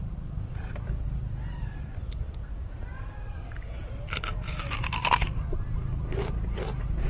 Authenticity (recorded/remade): remade